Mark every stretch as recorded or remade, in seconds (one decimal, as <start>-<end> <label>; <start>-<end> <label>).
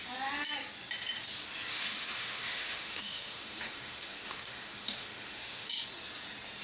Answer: 0.0-1.7 recorded; 1.7-5.7 remade; 5.7-6.6 recorded